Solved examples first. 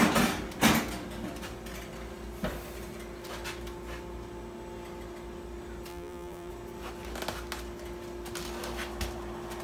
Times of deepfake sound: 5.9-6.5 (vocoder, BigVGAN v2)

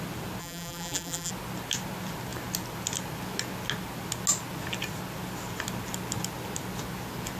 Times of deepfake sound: 0.4-1.3 (vocoder, BigVGAN v2)